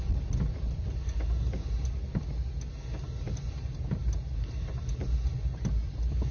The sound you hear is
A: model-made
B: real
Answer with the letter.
B